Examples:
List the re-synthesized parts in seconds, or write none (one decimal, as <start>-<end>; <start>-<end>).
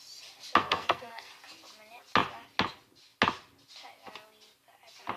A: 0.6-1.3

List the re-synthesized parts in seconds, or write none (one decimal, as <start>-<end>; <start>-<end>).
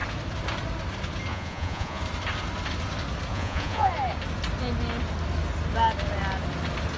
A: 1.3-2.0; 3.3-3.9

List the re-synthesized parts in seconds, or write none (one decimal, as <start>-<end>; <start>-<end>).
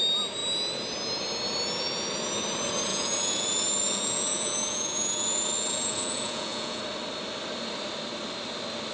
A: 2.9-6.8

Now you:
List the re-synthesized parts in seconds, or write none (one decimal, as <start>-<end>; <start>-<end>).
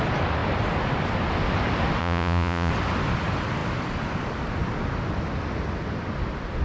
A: 2.0-2.7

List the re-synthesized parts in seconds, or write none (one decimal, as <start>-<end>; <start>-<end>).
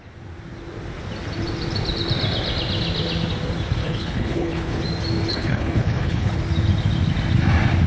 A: 3.8-4.8; 5.3-6.4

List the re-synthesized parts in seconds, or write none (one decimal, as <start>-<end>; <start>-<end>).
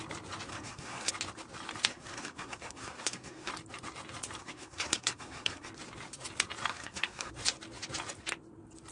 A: 0.5-1.1; 1.9-3.5; 4.4-5.7; 6.7-7.3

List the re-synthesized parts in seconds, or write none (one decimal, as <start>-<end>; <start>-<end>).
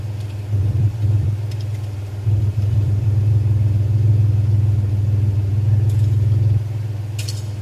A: 0.6-3.3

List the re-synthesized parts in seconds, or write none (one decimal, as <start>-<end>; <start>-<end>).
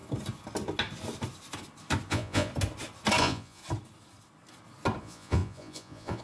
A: 2.1-2.5; 3.2-3.6; 5.0-6.2